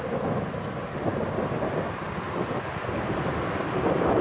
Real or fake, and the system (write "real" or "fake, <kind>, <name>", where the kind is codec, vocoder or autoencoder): real